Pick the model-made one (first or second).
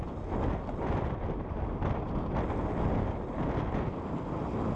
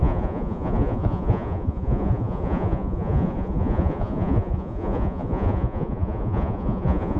second